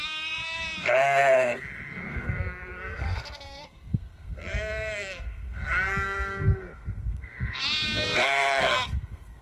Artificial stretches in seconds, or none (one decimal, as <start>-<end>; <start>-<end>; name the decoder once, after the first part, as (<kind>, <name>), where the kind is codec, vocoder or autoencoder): 0.0-9.4 (codec, SNAC)